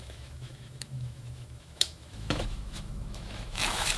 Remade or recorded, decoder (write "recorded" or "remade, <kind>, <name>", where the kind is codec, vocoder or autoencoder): remade, autoencoder, DAC-VAE